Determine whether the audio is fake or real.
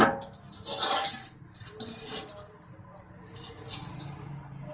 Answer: real